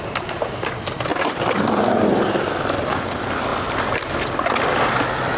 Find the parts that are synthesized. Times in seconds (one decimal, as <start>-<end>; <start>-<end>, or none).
none